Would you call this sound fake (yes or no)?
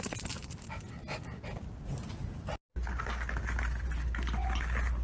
no